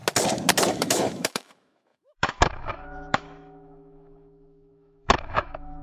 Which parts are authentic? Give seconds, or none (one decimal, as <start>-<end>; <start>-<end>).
0.0-0.7